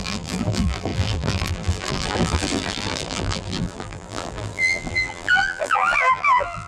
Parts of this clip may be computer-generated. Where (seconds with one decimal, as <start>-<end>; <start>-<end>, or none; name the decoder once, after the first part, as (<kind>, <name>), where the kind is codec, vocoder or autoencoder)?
0.0-6.7 (vocoder, BigVGAN v2)